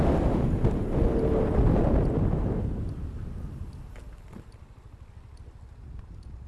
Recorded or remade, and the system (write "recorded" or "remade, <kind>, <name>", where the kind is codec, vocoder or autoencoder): recorded